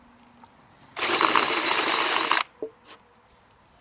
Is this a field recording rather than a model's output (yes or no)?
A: yes